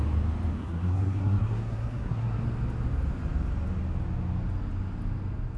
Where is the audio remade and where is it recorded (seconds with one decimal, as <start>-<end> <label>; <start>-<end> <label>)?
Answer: 0.0-0.5 recorded; 0.5-2.4 remade; 2.4-5.6 recorded